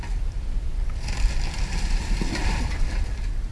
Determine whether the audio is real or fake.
real